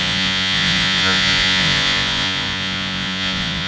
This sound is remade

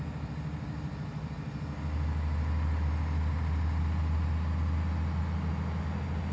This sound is recorded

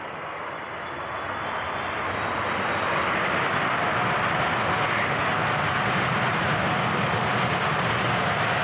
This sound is recorded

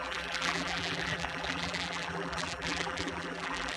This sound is remade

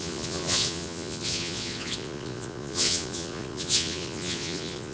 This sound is remade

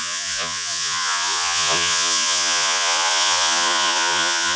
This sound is remade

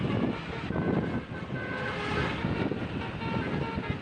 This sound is recorded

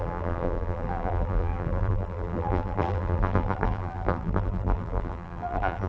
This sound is remade